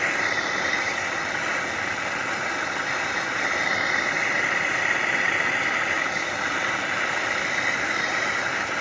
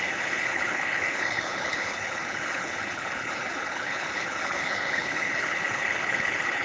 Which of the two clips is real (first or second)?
first